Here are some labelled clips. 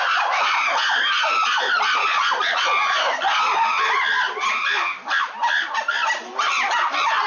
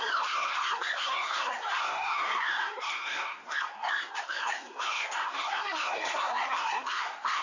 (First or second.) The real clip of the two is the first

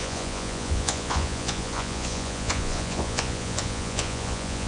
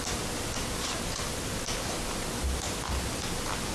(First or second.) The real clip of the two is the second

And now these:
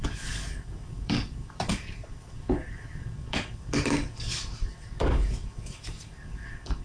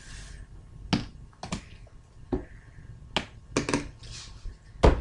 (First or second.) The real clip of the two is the second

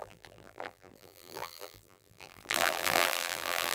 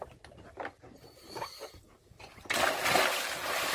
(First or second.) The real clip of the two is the second